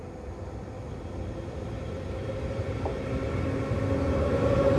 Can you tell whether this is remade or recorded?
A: recorded